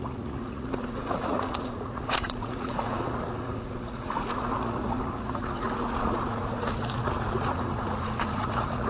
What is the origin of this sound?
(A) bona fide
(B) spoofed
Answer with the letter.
B